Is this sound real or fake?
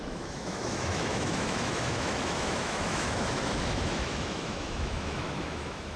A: fake